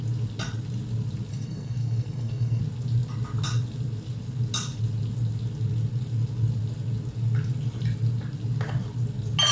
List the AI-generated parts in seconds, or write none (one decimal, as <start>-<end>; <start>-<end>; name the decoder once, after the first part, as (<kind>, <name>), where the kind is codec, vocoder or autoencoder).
1.3-2.6 (codec, SNAC)